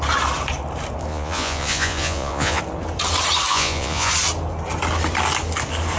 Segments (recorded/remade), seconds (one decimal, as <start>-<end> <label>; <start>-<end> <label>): 0.0-1.1 recorded; 1.1-2.6 remade; 2.6-3.5 recorded; 3.5-4.1 remade; 4.1-6.0 recorded